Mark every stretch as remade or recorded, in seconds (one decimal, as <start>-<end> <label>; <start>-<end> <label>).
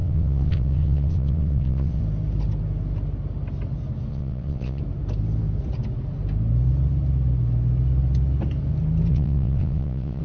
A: 0.0-2.0 remade; 2.0-4.1 recorded; 4.1-4.8 remade; 4.8-9.1 recorded; 9.1-10.2 remade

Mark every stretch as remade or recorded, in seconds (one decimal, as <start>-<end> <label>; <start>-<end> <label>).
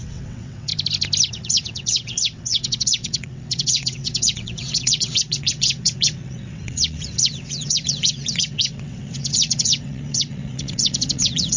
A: 0.0-0.7 remade; 0.7-1.3 recorded; 1.3-11.6 remade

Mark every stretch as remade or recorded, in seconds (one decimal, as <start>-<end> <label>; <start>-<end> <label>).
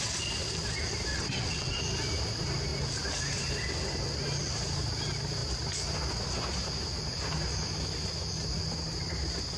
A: 0.0-1.1 recorded; 1.1-1.8 remade; 1.8-9.6 recorded